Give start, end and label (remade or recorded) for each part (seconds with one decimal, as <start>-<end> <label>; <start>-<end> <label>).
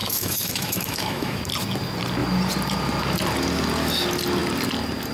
0.0-1.4 remade; 1.4-5.1 recorded